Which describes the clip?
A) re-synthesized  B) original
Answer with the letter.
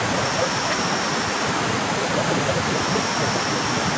B